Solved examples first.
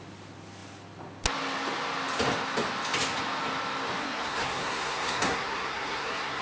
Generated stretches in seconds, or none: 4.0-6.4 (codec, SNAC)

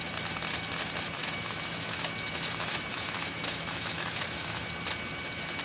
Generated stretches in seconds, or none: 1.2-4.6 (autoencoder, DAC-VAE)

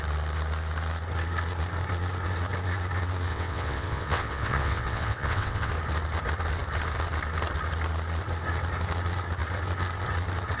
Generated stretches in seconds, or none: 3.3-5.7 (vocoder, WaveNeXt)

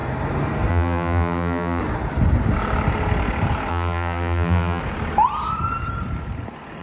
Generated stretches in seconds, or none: 0.7-1.8 (vocoder, BigVGAN v2); 3.7-4.8

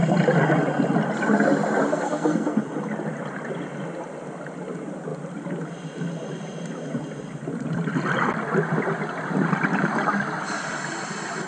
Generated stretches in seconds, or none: 1.9-2.6 (codec, SNAC)

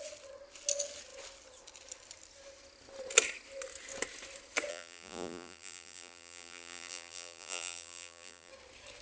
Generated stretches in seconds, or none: 4.7-8.5 (vocoder, BigVGAN v2)

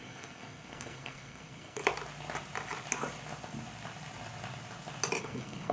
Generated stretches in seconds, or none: 0.0-1.8 (codec, SNAC); 5.2-5.7

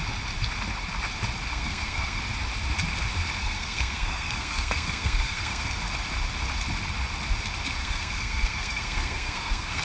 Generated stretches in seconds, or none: 1.5-2.2 (codec, SNAC); 3.4-5.8; 7.8-9.8